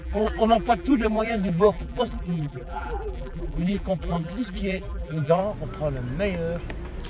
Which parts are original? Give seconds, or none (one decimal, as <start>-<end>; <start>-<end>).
5.4-7.1